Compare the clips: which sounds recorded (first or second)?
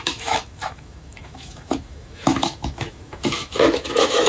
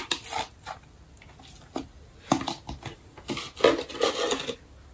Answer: second